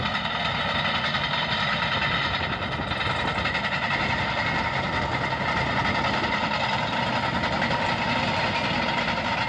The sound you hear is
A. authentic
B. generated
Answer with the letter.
A